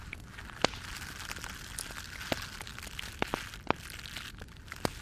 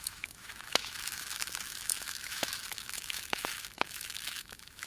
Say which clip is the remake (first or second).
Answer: second